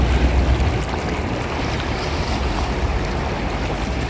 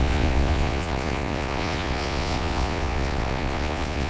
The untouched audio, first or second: first